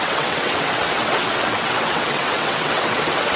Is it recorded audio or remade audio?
remade